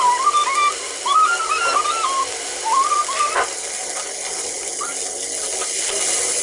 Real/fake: real